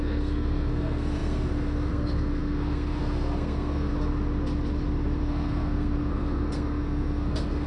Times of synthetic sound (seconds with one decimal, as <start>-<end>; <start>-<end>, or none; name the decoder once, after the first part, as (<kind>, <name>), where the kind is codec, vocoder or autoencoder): 0.0-3.9 (codec, SNAC); 5.2-7.7